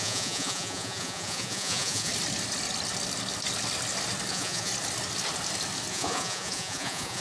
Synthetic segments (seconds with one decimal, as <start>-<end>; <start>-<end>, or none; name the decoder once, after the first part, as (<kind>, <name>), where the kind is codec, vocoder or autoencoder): 0.0-2.1 (vocoder, Vocos); 4.3-4.7; 5.9-7.2